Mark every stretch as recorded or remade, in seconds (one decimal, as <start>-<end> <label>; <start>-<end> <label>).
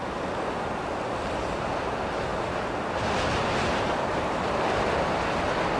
0.0-5.8 recorded